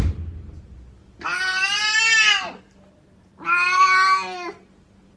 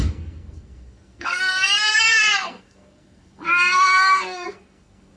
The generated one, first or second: second